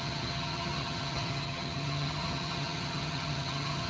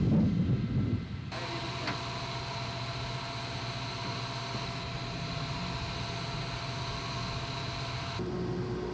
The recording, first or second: second